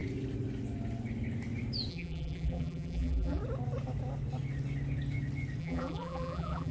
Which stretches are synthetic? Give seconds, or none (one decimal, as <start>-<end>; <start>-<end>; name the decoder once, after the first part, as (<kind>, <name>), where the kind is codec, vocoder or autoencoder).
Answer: 1.9-3.4 (vocoder, BigVGAN v2); 5.6-6.7